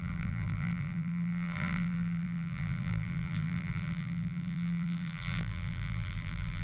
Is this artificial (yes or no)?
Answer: yes